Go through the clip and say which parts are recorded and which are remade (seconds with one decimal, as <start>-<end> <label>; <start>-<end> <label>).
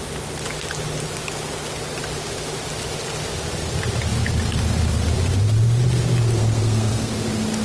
0.0-6.4 recorded; 6.4-7.1 remade; 7.1-7.6 recorded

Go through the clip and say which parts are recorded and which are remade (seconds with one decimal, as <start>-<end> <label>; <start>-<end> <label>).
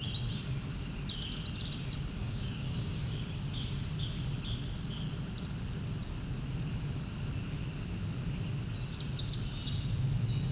0.0-2.2 recorded; 2.2-3.2 remade; 3.2-10.5 recorded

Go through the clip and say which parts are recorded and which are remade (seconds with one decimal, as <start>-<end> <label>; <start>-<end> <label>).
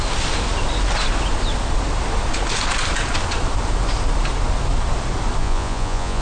0.0-5.4 recorded; 5.4-6.2 remade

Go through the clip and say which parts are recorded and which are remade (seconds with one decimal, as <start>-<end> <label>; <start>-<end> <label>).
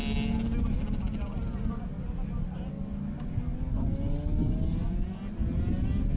0.0-6.2 recorded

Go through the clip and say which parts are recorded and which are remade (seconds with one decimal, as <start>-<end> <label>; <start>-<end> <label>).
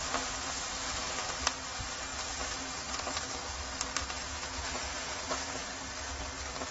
0.0-4.2 recorded; 4.2-5.7 remade; 5.7-6.7 recorded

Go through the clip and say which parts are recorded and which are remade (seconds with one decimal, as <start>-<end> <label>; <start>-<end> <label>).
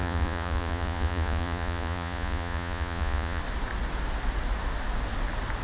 0.0-3.4 remade; 3.4-5.6 recorded